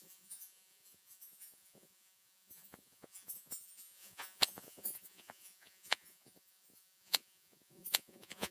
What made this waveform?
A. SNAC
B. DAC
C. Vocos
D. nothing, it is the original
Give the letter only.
C